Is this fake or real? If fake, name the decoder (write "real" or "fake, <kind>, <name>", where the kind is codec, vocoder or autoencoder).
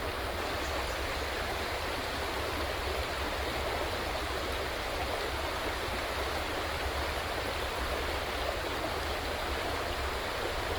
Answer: real